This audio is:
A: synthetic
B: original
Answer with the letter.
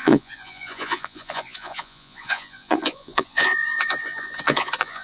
A